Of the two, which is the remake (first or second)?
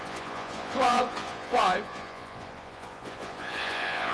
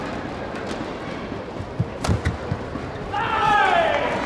first